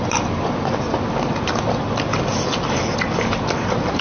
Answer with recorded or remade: recorded